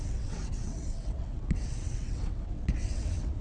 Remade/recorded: remade